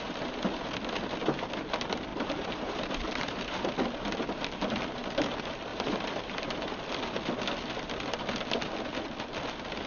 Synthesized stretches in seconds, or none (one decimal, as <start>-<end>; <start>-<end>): 2.1-3.7; 5.7-6.8